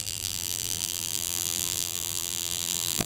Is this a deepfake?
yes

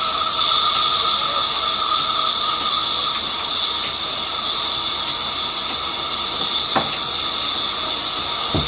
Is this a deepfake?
no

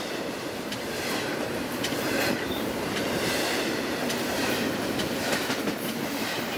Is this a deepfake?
yes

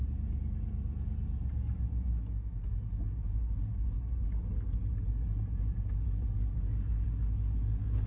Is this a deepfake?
no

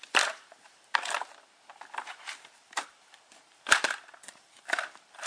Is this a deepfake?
yes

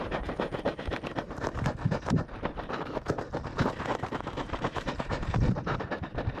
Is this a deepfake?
yes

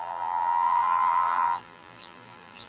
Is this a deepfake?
yes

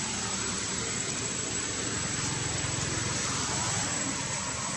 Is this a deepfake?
yes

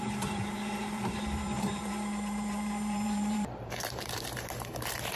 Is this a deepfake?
yes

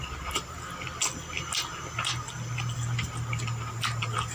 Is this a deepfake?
no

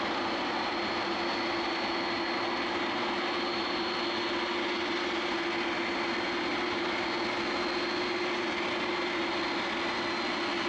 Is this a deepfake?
no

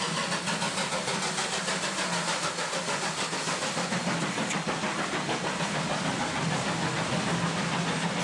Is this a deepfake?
no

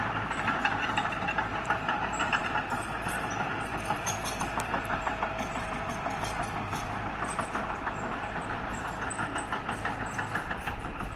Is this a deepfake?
yes